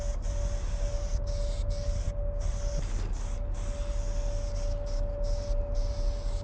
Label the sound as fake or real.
real